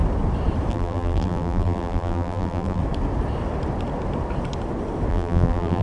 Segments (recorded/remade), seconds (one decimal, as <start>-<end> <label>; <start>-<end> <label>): 0.0-0.7 recorded; 0.7-2.8 remade; 2.8-5.1 recorded; 5.1-5.8 remade